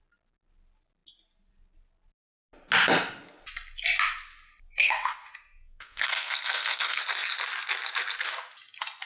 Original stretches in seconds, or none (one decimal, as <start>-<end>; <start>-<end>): 0.0-4.8; 7.0-9.1